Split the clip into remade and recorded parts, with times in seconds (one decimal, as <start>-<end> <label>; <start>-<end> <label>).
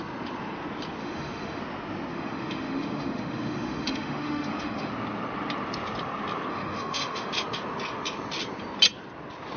0.0-1.0 recorded; 1.0-1.6 remade; 1.6-2.1 recorded; 2.1-4.9 remade; 4.9-6.5 recorded; 6.5-7.3 remade; 7.3-9.6 recorded